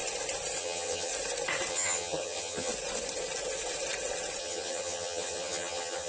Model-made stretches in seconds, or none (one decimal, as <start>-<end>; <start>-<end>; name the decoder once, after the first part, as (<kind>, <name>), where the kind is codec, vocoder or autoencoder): 0.6-1.1 (vocoder, HiFi-GAN); 1.7-2.7; 4.4-6.1